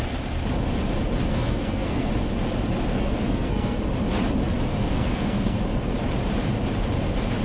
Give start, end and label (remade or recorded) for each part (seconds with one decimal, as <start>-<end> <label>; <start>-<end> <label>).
0.0-1.3 recorded; 1.3-2.1 remade; 2.1-2.9 recorded; 2.9-3.8 remade; 3.8-4.7 recorded; 4.7-5.6 remade; 5.6-7.4 recorded